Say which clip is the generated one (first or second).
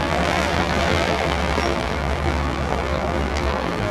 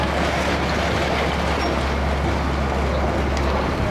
first